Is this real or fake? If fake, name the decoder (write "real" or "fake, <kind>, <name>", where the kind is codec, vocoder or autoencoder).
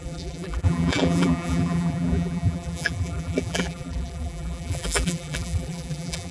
fake, vocoder, BigVGAN v2